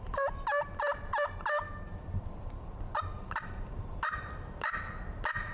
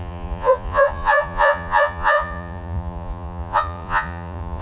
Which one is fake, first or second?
second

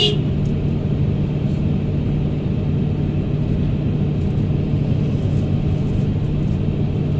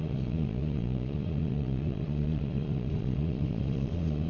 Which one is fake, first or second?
second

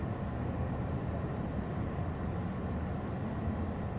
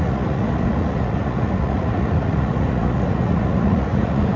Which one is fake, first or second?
second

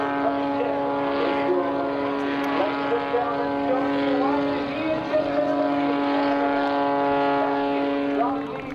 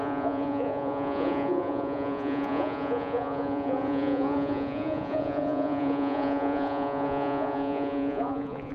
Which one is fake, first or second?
second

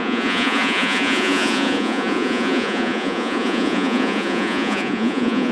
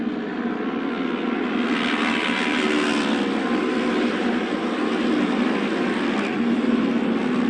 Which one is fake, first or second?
first